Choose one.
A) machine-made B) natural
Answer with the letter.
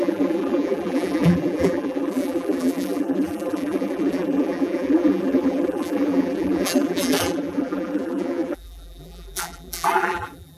A